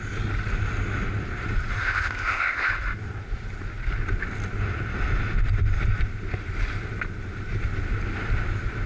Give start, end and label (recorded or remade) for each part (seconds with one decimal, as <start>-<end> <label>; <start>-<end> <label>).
0.0-1.8 recorded; 1.8-2.7 remade; 2.7-8.9 recorded